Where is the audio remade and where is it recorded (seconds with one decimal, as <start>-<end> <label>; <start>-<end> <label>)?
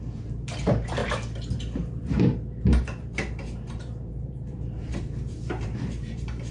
0.0-1.0 remade; 1.0-1.8 recorded; 1.8-6.5 remade